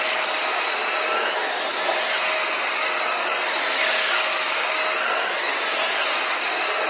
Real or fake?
real